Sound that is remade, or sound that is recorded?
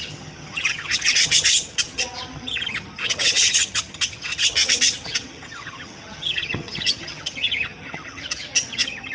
remade